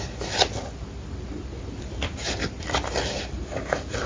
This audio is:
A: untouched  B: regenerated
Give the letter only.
B